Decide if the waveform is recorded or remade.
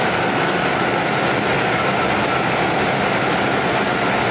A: recorded